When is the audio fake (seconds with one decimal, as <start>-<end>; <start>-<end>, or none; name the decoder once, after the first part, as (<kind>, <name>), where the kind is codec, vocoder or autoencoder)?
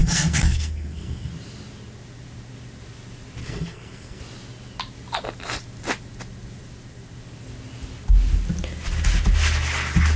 0.0-1.3 (codec, SNAC); 3.4-4.2